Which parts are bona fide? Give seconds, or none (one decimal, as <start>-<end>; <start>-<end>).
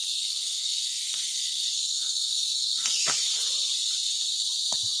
3.0-5.0